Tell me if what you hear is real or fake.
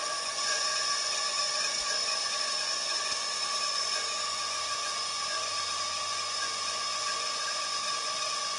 fake